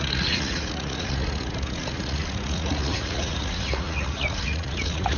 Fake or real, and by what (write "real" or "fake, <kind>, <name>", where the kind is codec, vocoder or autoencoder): fake, vocoder, Vocos